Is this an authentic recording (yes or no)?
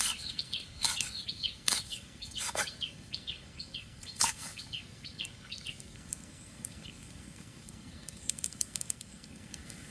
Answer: no